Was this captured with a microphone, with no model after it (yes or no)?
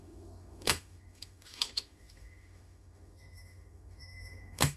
no